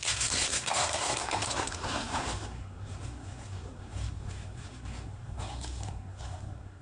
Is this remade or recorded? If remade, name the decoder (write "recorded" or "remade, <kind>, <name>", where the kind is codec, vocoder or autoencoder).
remade, codec, SNAC